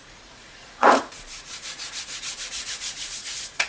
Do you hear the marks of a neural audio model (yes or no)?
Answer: yes